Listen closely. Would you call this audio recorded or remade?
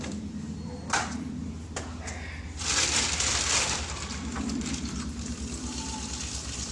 recorded